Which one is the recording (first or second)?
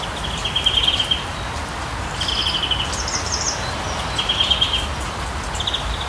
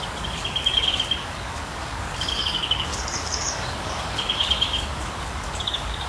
first